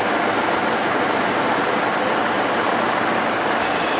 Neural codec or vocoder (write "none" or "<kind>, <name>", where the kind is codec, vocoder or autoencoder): none